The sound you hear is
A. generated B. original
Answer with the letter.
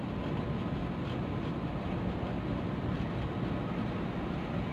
B